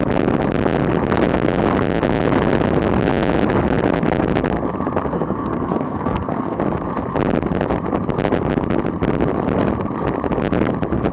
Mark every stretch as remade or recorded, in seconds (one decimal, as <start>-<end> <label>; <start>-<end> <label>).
0.0-5.0 recorded; 5.0-6.6 remade; 6.6-11.1 recorded